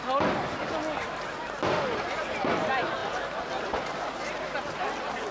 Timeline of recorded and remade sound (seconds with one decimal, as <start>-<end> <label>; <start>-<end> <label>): 0.0-5.3 recorded